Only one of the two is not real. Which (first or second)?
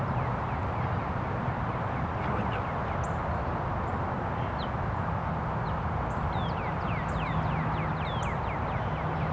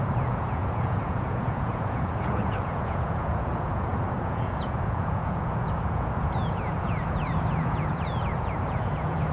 second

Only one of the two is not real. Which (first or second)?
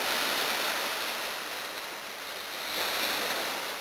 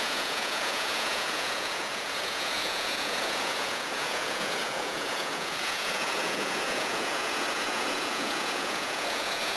second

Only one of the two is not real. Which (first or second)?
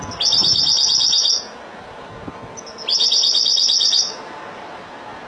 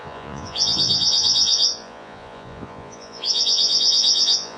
second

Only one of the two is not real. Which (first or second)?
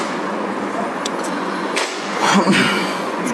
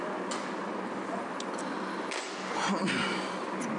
first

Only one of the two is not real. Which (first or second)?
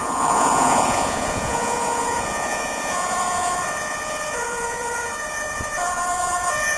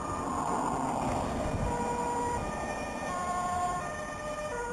first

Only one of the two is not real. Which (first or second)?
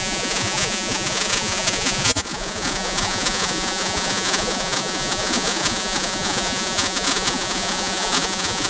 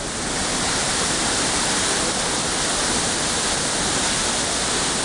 first